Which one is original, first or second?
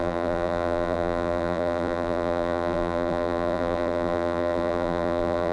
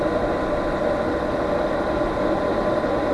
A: second